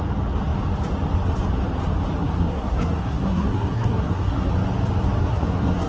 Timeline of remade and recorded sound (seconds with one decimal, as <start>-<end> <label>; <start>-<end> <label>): 0.0-2.2 recorded; 2.2-4.5 remade; 4.5-5.2 recorded; 5.2-5.9 remade